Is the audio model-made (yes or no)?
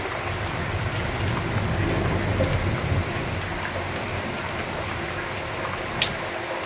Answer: no